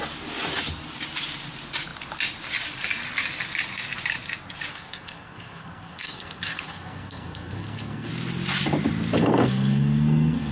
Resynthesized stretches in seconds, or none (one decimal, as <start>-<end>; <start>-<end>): 4.7-8.1; 9.2-10.5